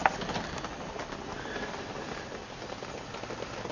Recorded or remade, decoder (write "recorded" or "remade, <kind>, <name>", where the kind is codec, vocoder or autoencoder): recorded